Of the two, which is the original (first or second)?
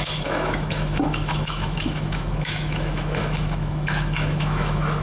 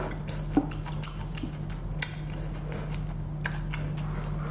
second